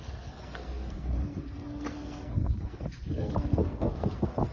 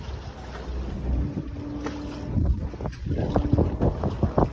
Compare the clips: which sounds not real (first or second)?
first